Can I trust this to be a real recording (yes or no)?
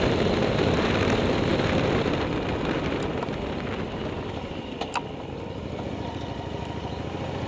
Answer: yes